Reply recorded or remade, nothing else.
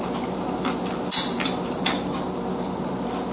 recorded